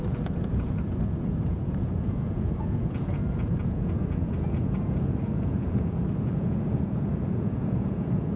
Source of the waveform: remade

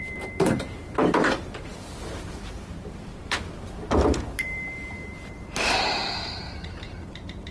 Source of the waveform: remade